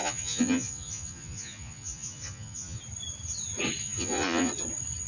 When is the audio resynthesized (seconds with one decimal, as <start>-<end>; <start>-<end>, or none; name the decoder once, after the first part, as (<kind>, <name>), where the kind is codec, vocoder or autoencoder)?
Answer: 0.0-2.8 (vocoder, Vocos); 3.8-4.5